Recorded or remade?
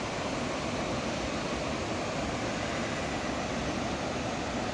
recorded